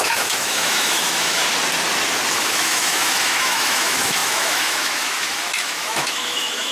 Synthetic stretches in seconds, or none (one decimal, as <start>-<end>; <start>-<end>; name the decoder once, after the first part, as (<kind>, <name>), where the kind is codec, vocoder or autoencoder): 0.0-1.4 (autoencoder, DAC-VAE); 2.3-6.7